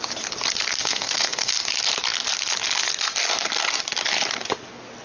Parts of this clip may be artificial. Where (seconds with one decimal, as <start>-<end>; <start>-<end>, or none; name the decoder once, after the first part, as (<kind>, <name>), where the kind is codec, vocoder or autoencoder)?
0.8-1.5 (codec, SNAC)

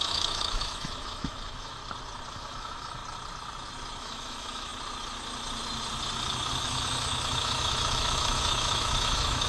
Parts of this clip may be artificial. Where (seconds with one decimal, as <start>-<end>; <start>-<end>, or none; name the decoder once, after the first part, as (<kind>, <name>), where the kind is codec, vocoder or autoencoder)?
0.0-1.8 (autoencoder, DAC-VAE); 2.3-3.0; 4.0-4.7; 6.5-9.5